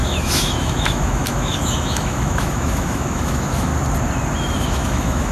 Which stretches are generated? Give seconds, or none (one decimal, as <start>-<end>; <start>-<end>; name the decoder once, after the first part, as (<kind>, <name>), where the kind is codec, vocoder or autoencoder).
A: 0.0-3.7 (autoencoder, DAC-VAE); 4.4-5.3

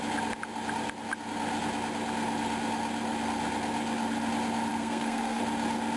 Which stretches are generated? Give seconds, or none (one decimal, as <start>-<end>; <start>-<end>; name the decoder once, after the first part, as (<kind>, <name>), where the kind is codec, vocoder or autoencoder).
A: 4.7-5.4 (codec, SNAC)

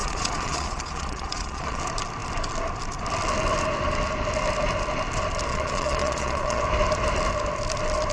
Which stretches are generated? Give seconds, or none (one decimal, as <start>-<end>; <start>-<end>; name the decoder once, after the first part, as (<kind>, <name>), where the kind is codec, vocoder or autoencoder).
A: 0.0-1.8 (vocoder, Vocos); 5.5-6.6

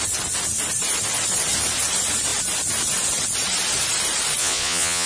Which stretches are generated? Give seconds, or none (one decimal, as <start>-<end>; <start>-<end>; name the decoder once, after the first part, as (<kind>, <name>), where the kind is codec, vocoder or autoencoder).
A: 4.4-5.1 (vocoder, Vocos)

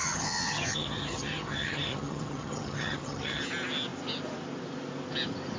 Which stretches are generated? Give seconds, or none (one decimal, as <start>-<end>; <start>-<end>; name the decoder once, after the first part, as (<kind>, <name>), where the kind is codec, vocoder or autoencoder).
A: 0.0-3.4 (vocoder, HiFi-GAN)

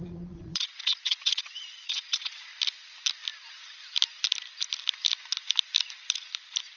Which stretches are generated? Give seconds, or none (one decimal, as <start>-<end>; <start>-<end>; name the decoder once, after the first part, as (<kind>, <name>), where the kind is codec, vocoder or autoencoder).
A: 0.0-2.5 (vocoder, Vocos)

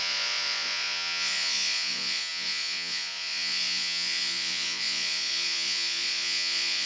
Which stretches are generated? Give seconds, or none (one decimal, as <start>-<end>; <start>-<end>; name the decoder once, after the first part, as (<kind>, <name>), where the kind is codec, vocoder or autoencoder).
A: 0.0-6.9 (vocoder, Vocos)

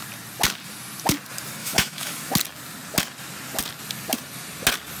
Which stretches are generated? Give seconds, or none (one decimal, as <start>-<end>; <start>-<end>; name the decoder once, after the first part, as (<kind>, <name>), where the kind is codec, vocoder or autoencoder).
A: 1.6-2.3 (autoencoder, DAC-VAE)